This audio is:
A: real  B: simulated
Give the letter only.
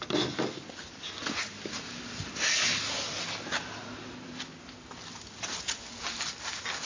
A